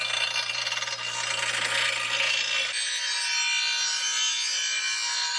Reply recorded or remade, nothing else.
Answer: recorded